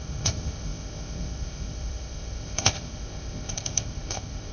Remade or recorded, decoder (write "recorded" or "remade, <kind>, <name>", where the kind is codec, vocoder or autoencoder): remade, codec, ZipCodec